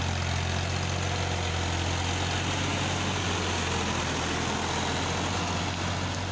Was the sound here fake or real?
real